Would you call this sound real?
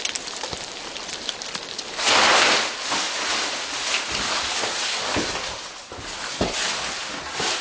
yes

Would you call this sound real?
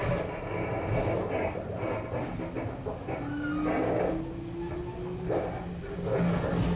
yes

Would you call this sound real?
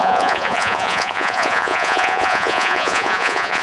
no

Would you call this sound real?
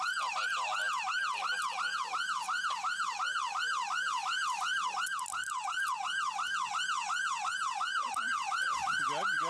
yes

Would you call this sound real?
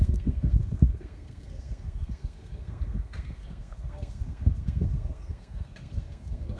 no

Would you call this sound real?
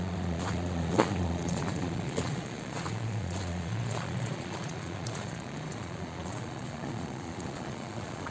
no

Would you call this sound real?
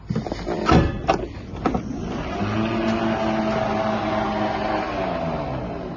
yes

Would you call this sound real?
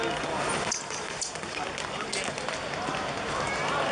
yes